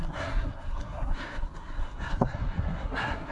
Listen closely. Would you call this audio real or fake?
fake